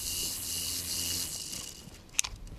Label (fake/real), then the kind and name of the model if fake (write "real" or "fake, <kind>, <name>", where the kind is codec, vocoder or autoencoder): real